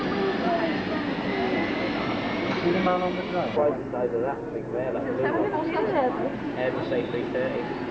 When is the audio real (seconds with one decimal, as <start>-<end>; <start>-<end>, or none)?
0.0-7.9